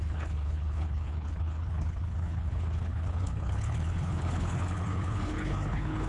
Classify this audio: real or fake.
fake